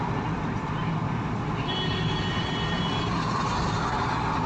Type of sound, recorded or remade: recorded